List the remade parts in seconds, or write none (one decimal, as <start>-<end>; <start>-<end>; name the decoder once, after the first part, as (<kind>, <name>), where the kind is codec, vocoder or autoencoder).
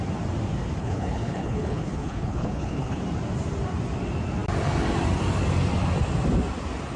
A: 0.8-3.0 (codec, HILCodec)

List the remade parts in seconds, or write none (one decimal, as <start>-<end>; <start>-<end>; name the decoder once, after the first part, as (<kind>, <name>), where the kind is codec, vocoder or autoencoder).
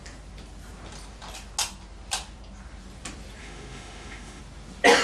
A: 3.4-4.4 (autoencoder, DAC-VAE)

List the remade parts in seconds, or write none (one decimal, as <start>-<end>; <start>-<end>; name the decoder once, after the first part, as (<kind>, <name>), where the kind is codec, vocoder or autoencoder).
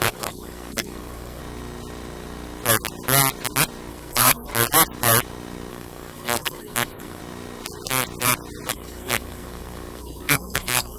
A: 0.0-1.4 (codec, SNAC); 3.9-4.5; 5.7-7.2; 8.7-11.0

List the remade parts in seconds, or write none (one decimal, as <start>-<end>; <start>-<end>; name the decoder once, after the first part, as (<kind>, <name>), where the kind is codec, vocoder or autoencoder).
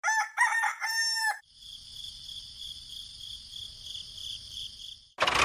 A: 0.9-2.1 (vocoder, BigVGAN v2); 2.6-3.2; 4.2-4.7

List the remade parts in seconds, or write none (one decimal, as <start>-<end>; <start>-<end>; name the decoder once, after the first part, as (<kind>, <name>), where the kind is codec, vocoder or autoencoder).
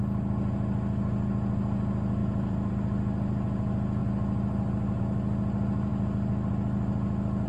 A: 2.2-2.7 (vocoder, BigVGAN v2)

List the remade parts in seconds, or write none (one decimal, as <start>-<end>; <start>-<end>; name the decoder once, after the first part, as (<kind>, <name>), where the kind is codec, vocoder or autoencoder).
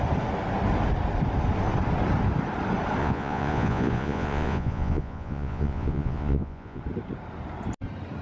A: 3.0-6.8 (vocoder, Vocos)